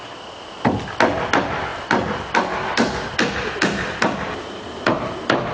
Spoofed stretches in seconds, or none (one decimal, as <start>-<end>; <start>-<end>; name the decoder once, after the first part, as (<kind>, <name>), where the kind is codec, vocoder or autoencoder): 1.7-5.0 (vocoder, BigVGAN v2)